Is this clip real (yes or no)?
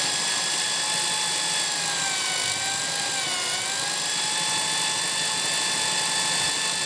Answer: yes